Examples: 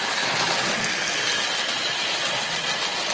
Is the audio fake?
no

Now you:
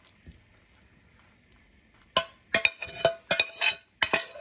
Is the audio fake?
no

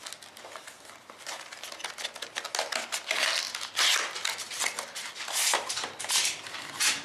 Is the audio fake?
no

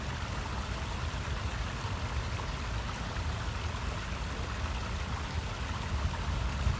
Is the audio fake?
no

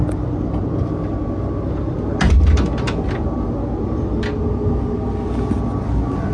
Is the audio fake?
no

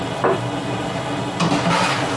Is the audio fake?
no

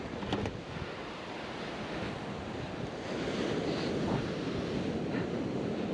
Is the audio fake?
no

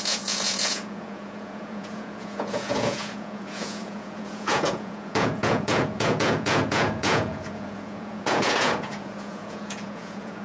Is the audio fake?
yes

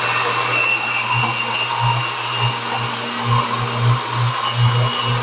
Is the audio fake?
no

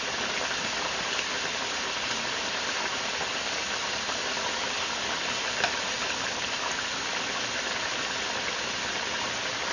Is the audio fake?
no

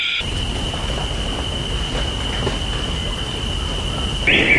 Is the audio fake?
no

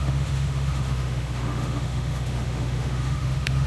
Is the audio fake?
yes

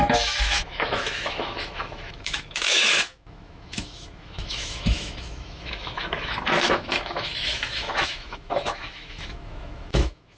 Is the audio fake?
yes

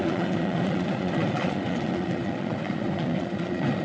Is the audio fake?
yes